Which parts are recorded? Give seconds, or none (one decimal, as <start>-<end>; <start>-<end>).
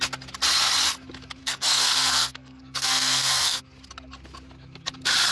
0.0-1.4; 3.6-5.3